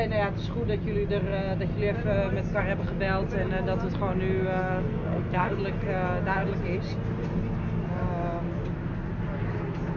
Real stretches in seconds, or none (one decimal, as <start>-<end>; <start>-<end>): 0.0-4.6; 5.6-10.0